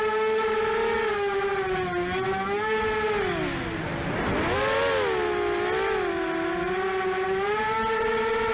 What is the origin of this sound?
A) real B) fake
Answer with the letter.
A